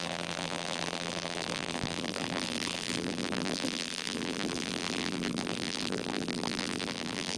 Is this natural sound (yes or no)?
no